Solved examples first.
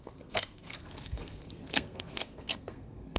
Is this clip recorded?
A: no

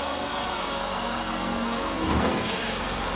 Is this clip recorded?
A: no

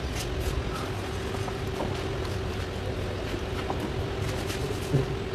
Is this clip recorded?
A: yes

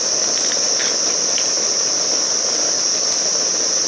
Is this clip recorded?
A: yes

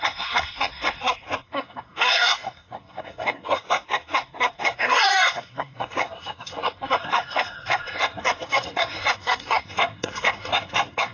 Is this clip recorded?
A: no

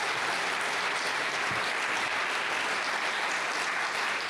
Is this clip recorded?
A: yes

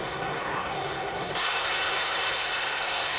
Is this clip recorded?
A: no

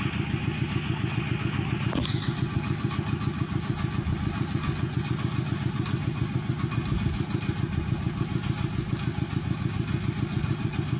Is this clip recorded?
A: yes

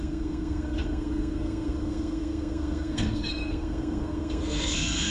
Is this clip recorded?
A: no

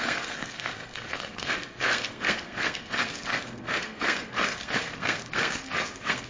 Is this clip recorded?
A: no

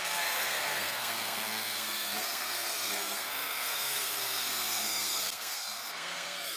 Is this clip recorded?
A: no